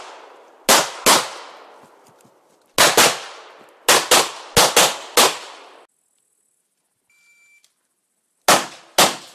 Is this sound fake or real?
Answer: real